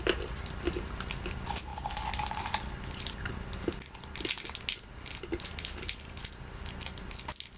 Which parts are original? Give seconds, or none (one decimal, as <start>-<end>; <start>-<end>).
0.0-7.6